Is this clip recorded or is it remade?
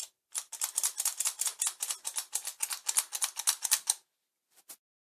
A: recorded